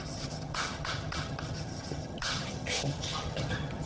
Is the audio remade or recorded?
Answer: remade